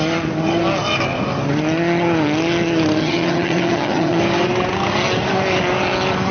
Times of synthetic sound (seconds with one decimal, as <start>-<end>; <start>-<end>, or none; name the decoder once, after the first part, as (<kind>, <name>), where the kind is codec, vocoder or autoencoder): 3.0-4.2 (vocoder, HiFi-GAN)